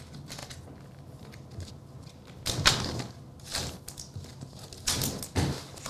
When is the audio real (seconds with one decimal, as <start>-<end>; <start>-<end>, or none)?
0.0-3.5; 4.4-5.9